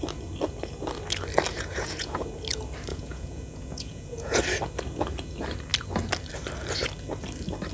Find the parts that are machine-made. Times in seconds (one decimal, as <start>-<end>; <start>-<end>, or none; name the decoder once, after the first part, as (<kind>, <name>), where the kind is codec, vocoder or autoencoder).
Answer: 1.5-2.2 (vocoder, Vocos); 2.9-4.4